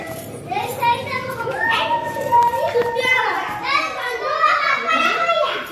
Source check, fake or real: real